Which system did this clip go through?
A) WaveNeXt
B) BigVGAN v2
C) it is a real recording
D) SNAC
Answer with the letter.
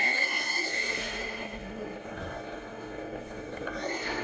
D